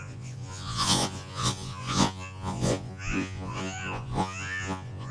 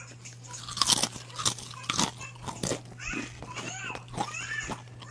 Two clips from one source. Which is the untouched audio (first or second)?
second